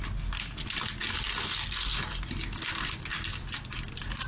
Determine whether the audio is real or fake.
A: real